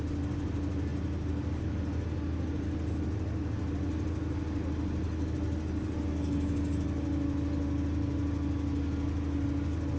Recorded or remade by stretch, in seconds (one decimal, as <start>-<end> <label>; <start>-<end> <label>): 0.0-10.0 recorded